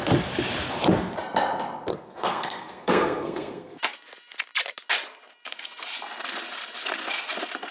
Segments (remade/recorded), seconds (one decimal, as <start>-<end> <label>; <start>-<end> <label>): 0.0-1.9 recorded; 1.9-3.8 remade; 3.8-7.7 recorded